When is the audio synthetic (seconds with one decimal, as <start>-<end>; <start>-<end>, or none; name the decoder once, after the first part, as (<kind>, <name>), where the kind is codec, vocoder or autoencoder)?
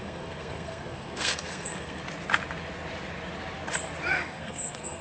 0.0-2.0 (codec, SNAC); 4.1-5.0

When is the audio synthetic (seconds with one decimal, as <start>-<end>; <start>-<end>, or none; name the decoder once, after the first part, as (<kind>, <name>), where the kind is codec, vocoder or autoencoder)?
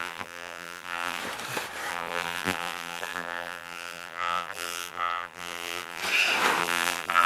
0.0-1.2 (vocoder, BigVGAN v2); 1.9-6.0; 6.6-7.3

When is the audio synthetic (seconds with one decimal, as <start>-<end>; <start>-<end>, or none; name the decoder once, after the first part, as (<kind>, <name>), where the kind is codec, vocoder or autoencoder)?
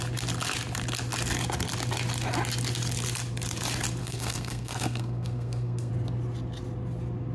4.0-5.9 (codec, SNAC)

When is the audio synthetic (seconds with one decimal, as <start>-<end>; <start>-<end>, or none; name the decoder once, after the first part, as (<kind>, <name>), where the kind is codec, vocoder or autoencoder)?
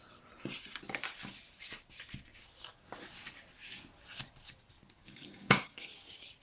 5.0-5.9 (codec, DAC)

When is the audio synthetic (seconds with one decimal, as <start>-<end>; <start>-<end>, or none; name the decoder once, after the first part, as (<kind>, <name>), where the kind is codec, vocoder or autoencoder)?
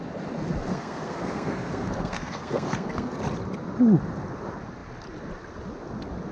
0.7-3.2 (codec, SNAC)